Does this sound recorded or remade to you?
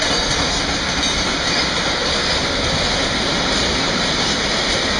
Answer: recorded